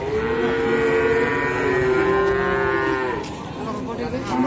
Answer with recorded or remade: recorded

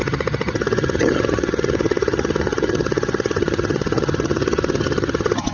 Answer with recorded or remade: remade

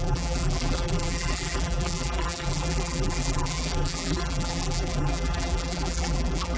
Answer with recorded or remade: remade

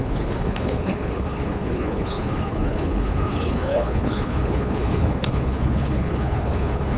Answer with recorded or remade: remade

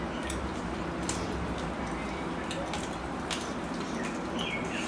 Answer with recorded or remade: recorded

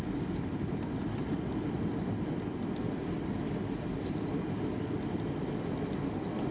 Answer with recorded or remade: recorded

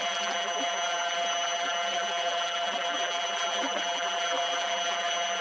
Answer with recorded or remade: remade